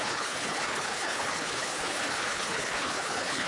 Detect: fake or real fake